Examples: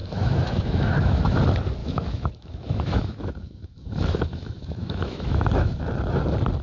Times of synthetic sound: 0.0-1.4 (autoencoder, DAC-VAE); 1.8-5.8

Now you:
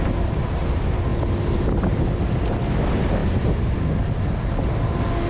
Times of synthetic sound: none

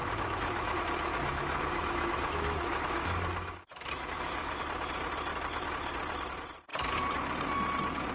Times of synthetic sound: 0.0-4.6 (autoencoder, DAC-VAE)

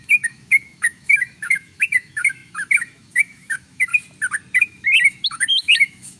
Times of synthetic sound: 0.0-3.9 (autoencoder, DAC-VAE); 4.6-6.2